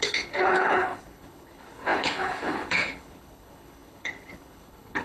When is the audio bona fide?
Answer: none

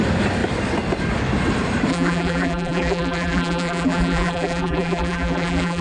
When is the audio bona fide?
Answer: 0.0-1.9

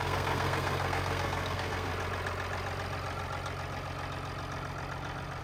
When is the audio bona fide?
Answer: 1.9-5.4